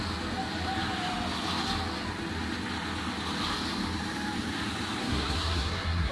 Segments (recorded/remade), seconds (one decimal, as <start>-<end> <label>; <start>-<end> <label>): 0.0-5.0 recorded; 5.0-6.1 remade